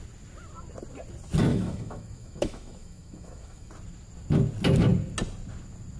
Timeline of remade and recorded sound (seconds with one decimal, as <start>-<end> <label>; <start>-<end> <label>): 0.0-1.5 recorded; 1.5-3.7 remade; 3.7-6.0 recorded